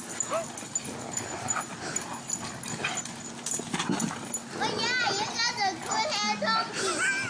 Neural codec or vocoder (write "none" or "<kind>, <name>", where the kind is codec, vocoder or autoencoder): none